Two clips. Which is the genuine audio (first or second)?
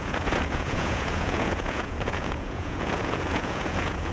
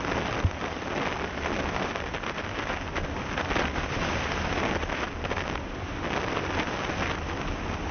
second